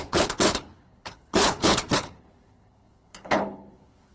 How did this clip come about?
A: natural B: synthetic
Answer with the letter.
B